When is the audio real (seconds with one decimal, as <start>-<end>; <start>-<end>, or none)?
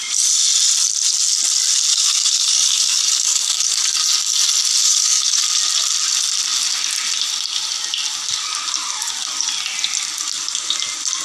0.0-1.9; 3.8-4.8; 5.4-11.2